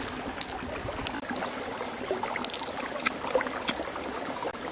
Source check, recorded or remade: recorded